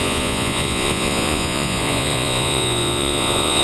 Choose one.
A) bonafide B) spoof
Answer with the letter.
B